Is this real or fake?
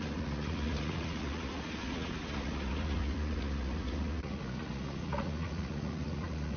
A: fake